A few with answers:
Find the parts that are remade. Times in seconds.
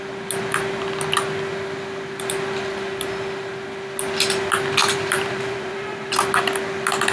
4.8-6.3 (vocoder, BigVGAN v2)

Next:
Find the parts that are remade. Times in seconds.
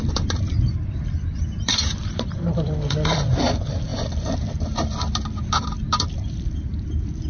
0.0-0.5 (vocoder, BigVGAN v2); 1.3-7.3